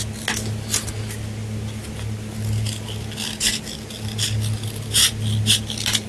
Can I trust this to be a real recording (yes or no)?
yes